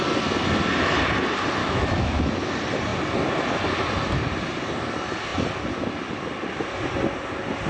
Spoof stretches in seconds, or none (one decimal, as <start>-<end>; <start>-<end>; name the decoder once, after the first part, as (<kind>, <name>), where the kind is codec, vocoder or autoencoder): 1.6-2.4 (autoencoder, DAC-VAE)